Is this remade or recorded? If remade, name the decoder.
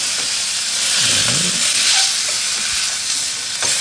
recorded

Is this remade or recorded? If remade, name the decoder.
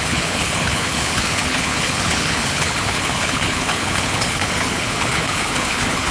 remade, codec, HILCodec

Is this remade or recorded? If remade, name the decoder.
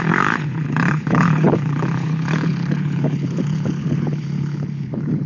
remade, codec, HILCodec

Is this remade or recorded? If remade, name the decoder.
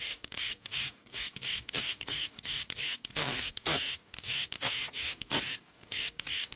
remade, codec, DAC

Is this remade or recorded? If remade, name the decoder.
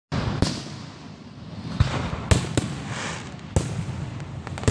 recorded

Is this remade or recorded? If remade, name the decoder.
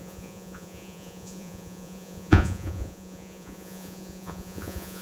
remade, vocoder, Vocos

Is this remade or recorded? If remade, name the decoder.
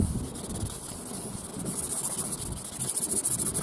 recorded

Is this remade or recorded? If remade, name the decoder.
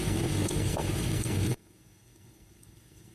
remade, codec, SNAC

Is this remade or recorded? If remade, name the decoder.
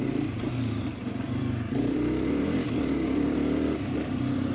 remade, vocoder, BigVGAN v2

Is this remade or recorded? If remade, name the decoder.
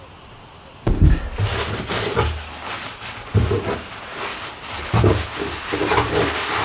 recorded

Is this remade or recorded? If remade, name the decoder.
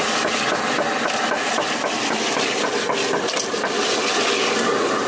recorded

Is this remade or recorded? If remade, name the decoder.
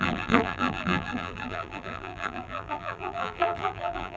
remade, vocoder, BigVGAN v2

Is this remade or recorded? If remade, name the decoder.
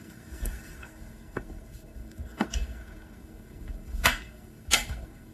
remade, codec, SNAC